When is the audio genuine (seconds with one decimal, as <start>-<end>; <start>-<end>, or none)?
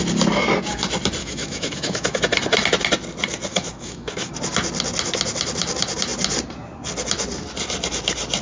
0.0-1.2; 2.2-3.5; 4.3-8.4